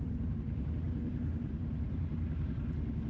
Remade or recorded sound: remade